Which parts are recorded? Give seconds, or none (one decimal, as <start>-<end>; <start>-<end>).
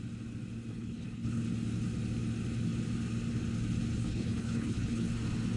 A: 0.0-0.7; 1.4-4.0; 5.1-5.6